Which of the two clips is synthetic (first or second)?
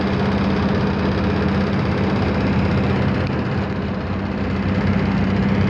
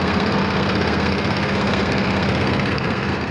second